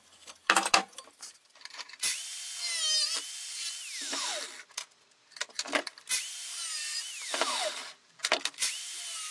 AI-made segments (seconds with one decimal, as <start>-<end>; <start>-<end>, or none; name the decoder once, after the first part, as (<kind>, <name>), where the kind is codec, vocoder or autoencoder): 0.0-2.1 (vocoder, BigVGAN v2); 5.5-9.3